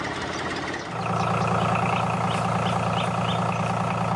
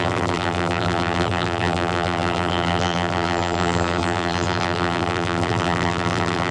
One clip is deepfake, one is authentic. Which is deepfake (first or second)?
second